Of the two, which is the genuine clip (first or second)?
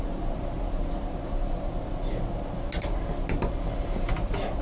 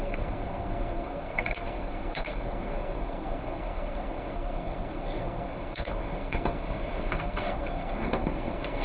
first